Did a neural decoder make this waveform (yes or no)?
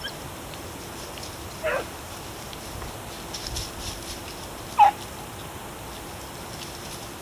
no